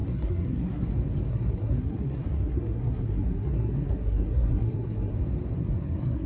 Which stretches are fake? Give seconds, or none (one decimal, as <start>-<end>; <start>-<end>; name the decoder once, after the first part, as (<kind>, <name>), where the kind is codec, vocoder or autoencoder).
0.0-0.9 (codec, SNAC); 1.3-5.1; 5.6-6.3